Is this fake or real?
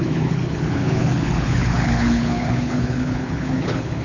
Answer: fake